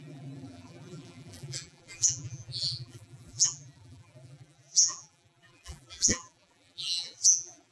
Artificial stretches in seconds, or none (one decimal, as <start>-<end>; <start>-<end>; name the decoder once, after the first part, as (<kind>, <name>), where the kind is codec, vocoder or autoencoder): 0.0-7.7 (vocoder, BigVGAN v2)